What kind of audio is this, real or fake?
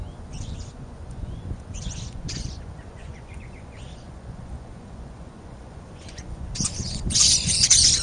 fake